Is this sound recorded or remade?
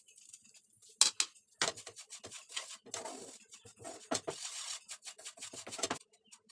recorded